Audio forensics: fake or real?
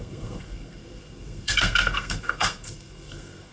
fake